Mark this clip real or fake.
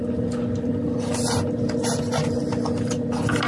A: real